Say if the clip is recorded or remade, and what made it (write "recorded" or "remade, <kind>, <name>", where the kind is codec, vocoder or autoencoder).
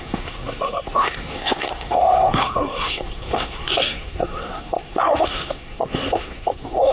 remade, codec, SNAC